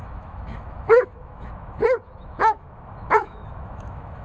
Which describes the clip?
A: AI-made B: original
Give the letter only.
A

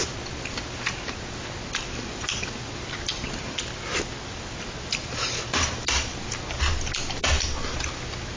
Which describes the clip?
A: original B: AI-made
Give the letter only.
A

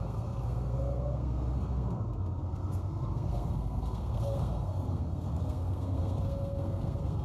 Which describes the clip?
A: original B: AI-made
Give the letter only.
B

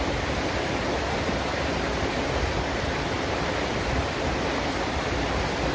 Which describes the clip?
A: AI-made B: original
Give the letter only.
B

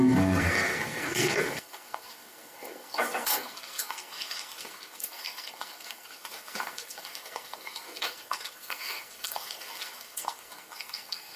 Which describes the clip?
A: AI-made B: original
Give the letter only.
A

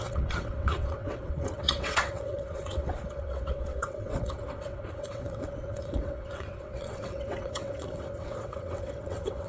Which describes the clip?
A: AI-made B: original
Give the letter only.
A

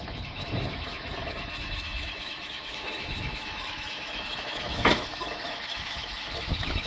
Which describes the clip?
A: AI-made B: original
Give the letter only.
A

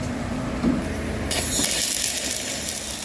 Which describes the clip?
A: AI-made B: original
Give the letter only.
B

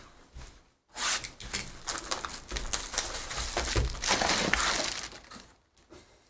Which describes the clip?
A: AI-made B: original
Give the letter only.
B